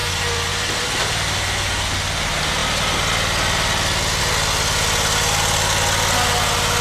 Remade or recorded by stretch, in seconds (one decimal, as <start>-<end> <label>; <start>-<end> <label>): 0.0-0.5 remade; 0.5-6.8 recorded